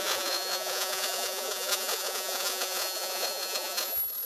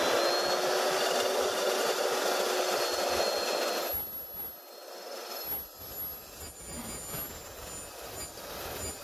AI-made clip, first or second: first